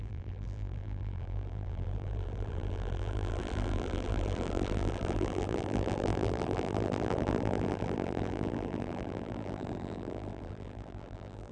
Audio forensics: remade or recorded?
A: remade